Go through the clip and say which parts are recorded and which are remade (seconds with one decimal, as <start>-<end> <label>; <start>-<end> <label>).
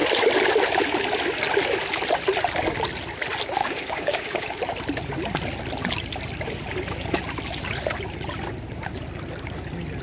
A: 0.0-3.6 recorded; 3.6-4.6 remade; 4.6-10.0 recorded